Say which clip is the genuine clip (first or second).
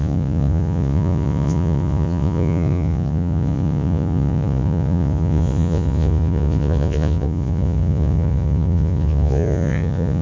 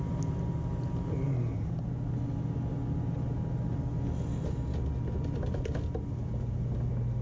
second